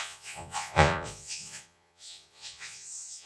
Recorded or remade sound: remade